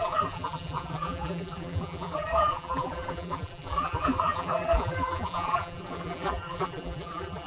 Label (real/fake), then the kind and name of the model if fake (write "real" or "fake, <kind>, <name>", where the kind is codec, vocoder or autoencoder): fake, vocoder, BigVGAN v2